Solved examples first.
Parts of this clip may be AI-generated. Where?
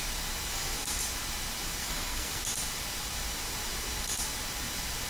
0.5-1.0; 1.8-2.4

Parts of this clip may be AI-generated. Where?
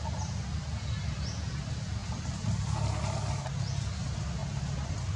none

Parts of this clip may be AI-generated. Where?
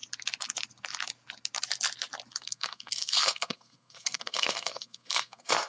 2.3-5.7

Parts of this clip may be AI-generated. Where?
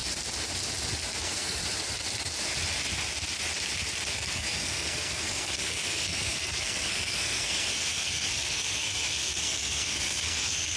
1.2-1.6; 4.1-10.8